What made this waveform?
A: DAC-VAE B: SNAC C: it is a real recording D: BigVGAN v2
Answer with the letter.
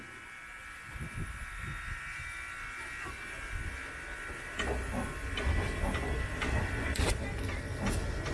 C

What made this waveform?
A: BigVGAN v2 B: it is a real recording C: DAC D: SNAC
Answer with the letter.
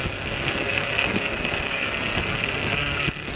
D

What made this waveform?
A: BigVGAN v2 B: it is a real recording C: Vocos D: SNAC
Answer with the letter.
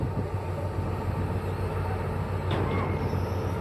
B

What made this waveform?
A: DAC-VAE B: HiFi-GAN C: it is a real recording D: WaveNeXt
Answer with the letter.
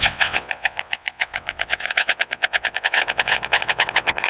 D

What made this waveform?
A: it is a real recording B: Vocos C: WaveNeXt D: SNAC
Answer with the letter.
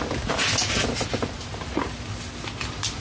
A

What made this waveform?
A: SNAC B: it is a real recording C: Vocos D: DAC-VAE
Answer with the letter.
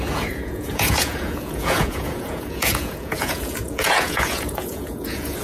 C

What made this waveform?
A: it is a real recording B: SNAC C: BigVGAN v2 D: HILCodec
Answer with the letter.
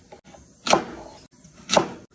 A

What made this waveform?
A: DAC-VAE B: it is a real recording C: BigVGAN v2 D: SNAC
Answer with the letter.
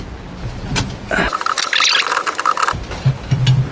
B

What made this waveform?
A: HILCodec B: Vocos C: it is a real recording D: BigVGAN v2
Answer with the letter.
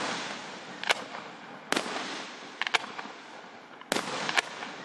C